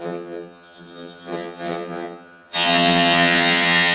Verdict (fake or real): fake